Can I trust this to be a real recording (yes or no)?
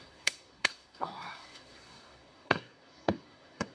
no